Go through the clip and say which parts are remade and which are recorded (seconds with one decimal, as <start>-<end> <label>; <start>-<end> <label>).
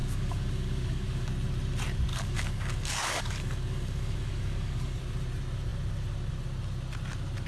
0.0-1.3 remade; 1.3-2.1 recorded; 2.1-5.0 remade; 5.0-7.5 recorded